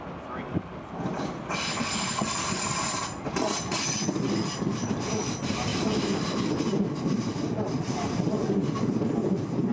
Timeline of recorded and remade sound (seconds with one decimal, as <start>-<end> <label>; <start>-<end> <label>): 0.0-5.7 recorded; 5.7-6.4 remade; 6.4-9.7 recorded